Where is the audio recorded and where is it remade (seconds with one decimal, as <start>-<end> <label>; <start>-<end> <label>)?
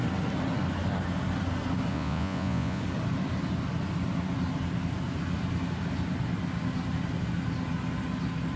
0.0-1.9 recorded; 1.9-2.8 remade; 2.8-8.6 recorded